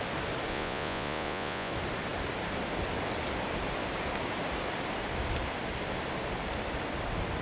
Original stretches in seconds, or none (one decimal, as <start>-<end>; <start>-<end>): 0.0-0.5; 1.7-7.4